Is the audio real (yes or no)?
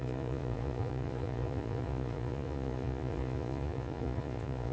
no